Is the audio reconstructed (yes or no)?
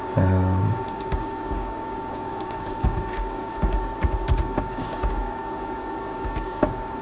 yes